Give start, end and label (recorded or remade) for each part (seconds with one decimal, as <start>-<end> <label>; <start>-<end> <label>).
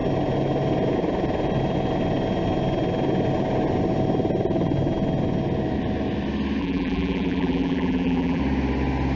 0.0-6.6 recorded; 6.6-8.4 remade; 8.4-9.2 recorded